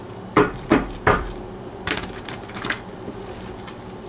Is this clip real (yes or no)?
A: no